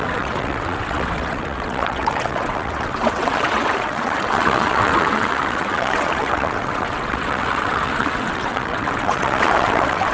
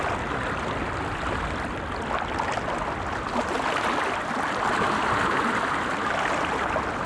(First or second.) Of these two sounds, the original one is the second